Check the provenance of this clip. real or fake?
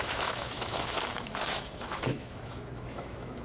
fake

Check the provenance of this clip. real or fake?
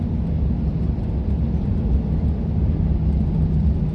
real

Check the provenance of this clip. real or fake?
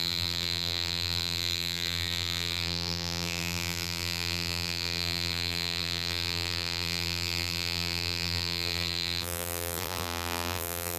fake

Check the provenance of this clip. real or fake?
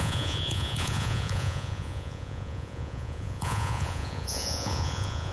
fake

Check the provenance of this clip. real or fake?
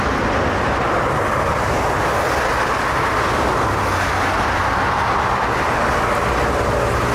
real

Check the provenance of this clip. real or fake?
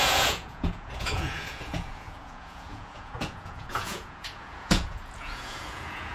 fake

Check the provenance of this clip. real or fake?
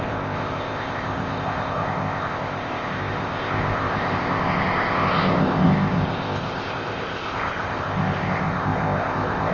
fake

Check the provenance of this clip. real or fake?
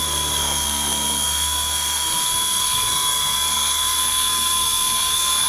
fake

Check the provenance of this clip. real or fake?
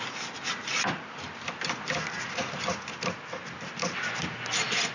real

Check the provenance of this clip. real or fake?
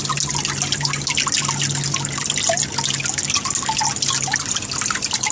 real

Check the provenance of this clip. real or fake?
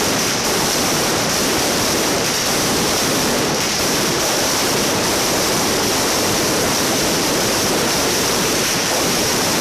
fake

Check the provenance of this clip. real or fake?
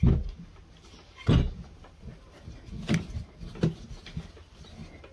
real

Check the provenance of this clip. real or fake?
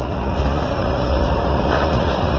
fake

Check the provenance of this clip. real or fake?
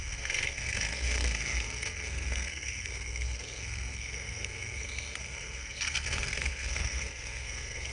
fake